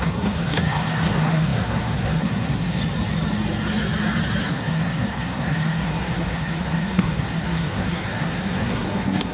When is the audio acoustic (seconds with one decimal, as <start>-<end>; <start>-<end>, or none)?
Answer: 2.8-4.4